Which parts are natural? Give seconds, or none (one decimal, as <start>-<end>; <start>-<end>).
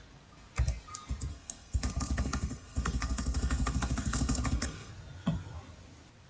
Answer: 0.0-1.3; 4.9-6.3